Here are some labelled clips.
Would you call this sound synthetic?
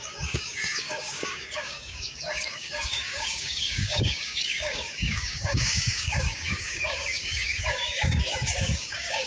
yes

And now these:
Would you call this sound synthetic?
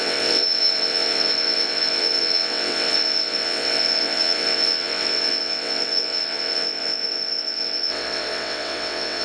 yes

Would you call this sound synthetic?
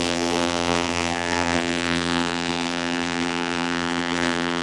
yes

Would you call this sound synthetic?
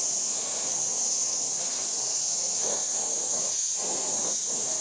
yes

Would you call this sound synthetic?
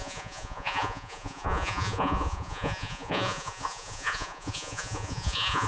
yes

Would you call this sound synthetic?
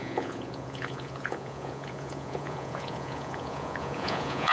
yes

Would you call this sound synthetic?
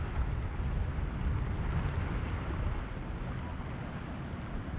no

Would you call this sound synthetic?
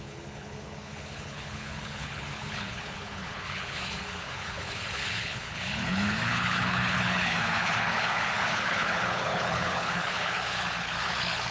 yes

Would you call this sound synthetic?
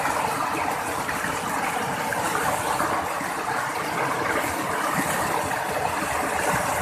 no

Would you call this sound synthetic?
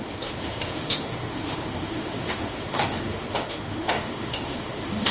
yes